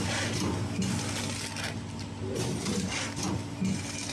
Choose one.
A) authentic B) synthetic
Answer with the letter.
A